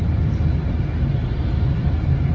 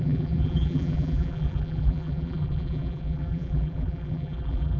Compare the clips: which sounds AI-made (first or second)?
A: second